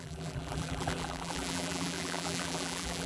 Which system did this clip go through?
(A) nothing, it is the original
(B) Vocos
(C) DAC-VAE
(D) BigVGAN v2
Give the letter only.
D